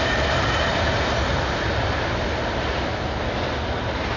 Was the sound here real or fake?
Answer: real